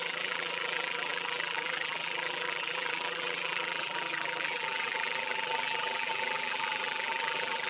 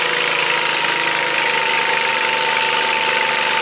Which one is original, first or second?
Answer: second